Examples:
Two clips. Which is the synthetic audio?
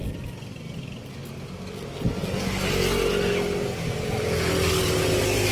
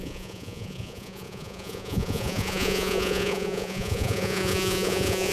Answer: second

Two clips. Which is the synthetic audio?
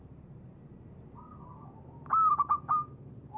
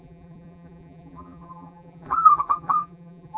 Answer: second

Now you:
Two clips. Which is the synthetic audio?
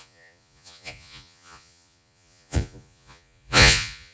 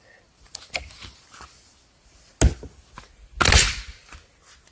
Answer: first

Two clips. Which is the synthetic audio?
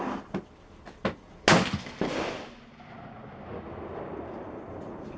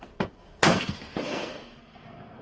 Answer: second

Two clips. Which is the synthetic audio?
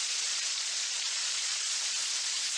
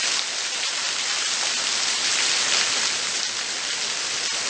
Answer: first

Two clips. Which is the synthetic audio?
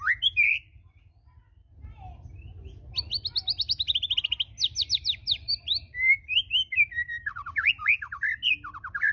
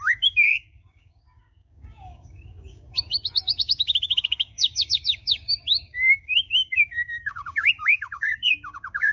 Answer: second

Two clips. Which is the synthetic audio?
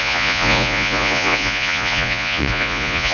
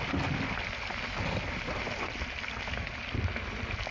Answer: first